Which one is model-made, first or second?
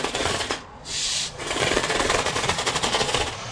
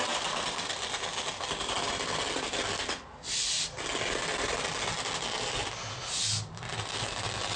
first